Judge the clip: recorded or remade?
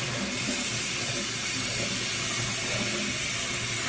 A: recorded